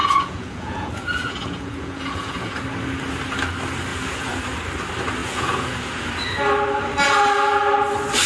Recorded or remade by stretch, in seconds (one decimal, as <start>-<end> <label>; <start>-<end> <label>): 0.0-2.6 remade; 2.6-3.9 recorded; 3.9-4.4 remade; 4.4-5.2 recorded; 5.2-6.1 remade; 6.1-8.3 recorded